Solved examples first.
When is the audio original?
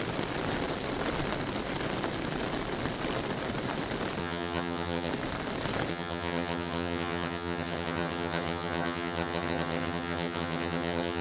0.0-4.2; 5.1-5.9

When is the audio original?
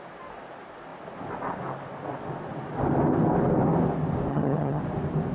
0.0-4.3; 4.8-5.3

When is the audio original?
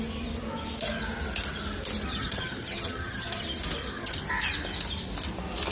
0.0-2.1; 3.4-3.8; 4.3-5.7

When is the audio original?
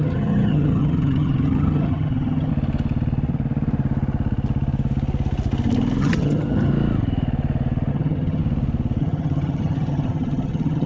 2.5-6.0; 6.7-7.9; 8.4-9.0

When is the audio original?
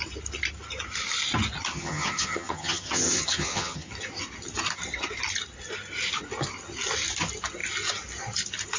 0.0-1.7; 3.9-8.8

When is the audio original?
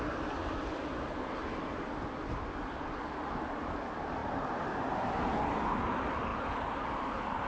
0.0-7.5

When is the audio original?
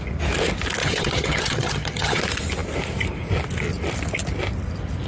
0.0-0.8; 2.2-5.1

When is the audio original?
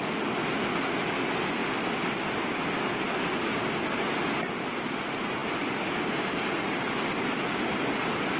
0.0-8.4